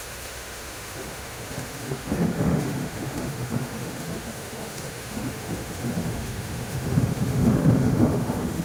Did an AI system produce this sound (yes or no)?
yes